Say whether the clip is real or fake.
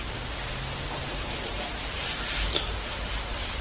fake